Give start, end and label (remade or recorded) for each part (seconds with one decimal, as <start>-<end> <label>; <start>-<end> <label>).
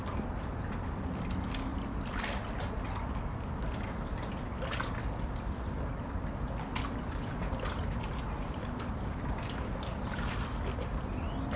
0.0-11.6 recorded